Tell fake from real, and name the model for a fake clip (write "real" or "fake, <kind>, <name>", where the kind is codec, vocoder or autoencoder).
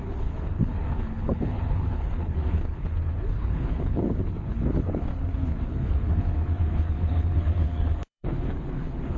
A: fake, codec, HILCodec